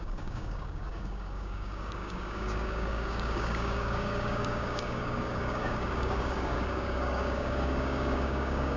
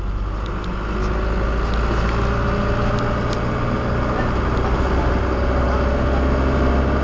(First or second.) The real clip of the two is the second